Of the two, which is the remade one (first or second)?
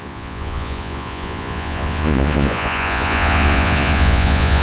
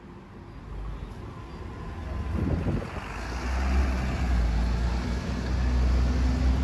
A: first